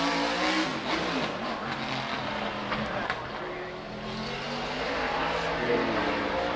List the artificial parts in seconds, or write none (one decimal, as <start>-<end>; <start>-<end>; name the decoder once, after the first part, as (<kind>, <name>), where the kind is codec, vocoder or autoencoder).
none

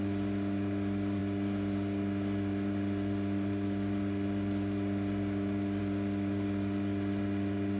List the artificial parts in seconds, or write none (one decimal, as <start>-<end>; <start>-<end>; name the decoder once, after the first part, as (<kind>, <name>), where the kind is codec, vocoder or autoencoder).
none

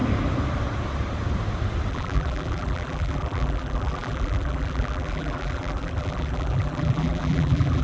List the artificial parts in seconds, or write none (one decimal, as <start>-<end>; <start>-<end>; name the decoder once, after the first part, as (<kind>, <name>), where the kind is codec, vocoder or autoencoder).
1.9-7.8 (vocoder, BigVGAN v2)

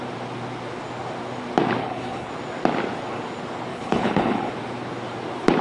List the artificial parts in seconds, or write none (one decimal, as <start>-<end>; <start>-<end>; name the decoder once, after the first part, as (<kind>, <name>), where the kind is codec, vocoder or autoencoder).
1.8-2.3 (codec, HILCodec); 3.7-4.5

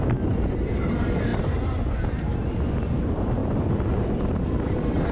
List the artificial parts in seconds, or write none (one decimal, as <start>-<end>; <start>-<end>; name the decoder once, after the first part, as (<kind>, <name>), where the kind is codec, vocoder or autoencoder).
0.0-1.3 (vocoder, BigVGAN v2); 2.8-3.4; 4.6-5.1

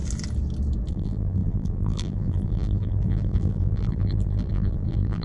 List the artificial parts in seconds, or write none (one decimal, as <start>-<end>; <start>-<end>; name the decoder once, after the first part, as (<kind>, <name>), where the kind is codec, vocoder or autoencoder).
0.9-5.2 (vocoder, BigVGAN v2)

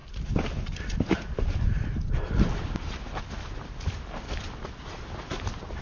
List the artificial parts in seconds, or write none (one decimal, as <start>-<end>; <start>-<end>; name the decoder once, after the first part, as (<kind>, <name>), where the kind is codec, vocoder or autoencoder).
none